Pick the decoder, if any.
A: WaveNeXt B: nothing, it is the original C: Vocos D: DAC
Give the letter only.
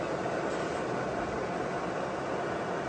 B